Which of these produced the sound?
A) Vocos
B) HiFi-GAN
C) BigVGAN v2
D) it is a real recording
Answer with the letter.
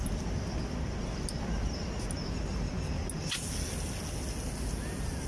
D